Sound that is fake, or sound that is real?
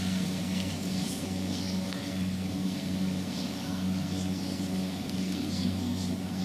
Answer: fake